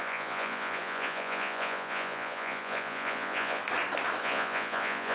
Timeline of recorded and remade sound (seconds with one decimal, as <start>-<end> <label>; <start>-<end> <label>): 0.0-3.6 remade; 3.6-4.2 recorded; 4.2-5.1 remade